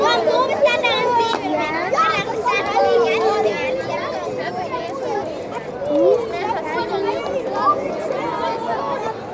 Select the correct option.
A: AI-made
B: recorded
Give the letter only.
B